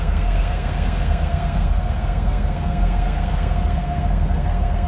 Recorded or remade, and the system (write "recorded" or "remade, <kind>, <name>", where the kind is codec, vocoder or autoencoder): remade, codec, SNAC